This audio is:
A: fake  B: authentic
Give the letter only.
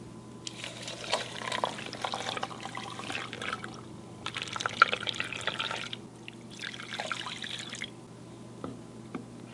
B